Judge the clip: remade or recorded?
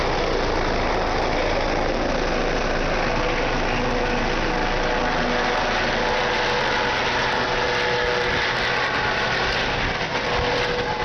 recorded